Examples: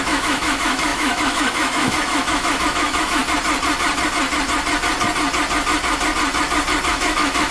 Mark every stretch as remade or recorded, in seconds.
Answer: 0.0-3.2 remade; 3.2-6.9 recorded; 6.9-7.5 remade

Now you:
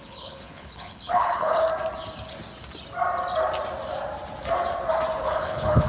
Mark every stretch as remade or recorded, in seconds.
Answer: 0.0-1.7 remade; 1.7-5.2 recorded; 5.2-5.9 remade